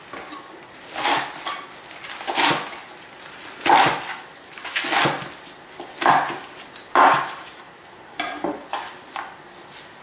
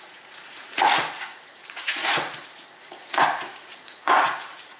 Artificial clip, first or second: second